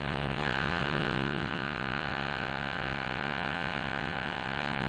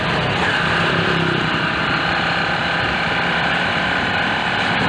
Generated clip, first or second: first